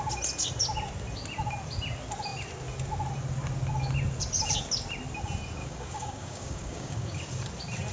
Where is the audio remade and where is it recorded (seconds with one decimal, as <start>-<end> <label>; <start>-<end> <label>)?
0.0-5.6 recorded; 5.6-7.2 remade; 7.2-7.9 recorded